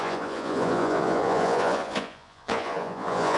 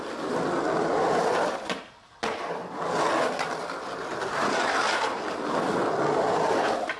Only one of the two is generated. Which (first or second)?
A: first